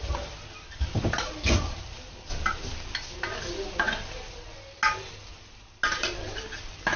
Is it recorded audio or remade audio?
recorded